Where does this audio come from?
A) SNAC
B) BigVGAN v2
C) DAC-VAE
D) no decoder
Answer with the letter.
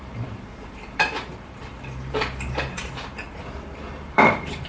B